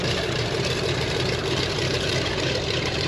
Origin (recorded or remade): remade